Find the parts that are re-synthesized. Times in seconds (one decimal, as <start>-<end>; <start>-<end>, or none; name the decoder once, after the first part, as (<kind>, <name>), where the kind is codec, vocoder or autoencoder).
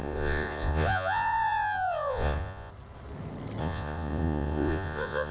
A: 0.0-2.7 (vocoder, Vocos); 3.6-5.3